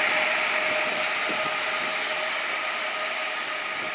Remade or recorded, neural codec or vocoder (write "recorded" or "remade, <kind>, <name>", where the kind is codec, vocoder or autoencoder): recorded